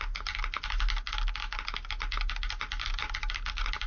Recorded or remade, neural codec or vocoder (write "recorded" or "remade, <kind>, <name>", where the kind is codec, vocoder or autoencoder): recorded